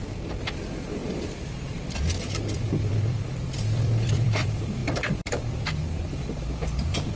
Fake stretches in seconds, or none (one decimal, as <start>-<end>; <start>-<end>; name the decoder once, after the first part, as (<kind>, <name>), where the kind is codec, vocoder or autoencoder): 0.0-7.2 (vocoder, BigVGAN v2)